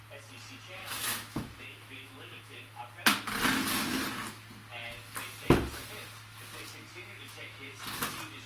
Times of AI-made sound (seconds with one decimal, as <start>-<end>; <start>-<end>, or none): 0.8-2.8; 6.9-7.8